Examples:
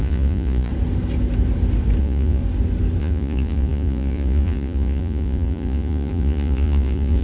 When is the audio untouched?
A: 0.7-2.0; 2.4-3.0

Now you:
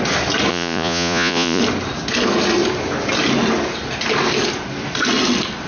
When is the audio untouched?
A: 0.0-0.5; 1.6-5.7

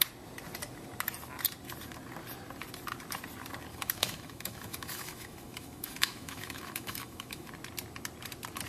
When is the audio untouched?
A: 0.0-3.7; 7.5-8.7

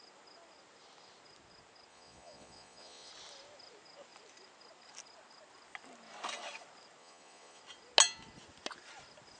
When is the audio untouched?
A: 0.0-1.9; 3.1-7.0; 7.6-9.4

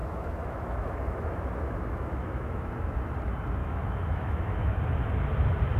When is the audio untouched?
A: 2.7-3.6; 4.8-5.8

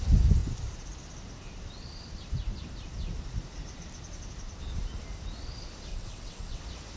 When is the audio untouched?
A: 0.0-5.9; 6.6-7.0